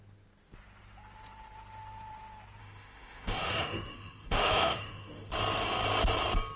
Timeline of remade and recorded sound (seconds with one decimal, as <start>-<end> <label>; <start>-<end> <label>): 0.0-2.6 recorded; 2.6-5.3 remade; 5.3-6.6 recorded